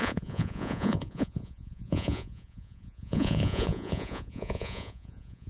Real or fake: fake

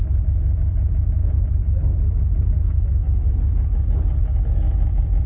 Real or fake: real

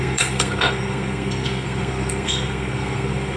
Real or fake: fake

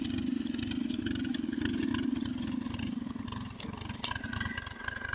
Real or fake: real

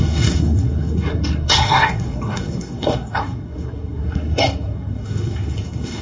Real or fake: fake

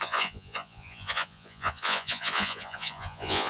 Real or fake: fake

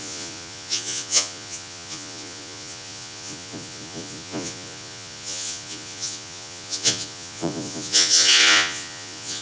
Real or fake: fake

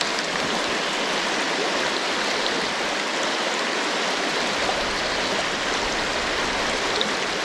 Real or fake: real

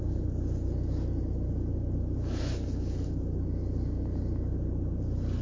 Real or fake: real